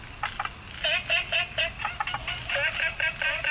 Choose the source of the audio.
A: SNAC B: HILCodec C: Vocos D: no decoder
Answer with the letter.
D